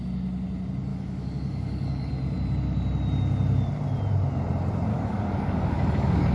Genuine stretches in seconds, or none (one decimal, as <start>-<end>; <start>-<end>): 0.0-0.9; 2.1-4.9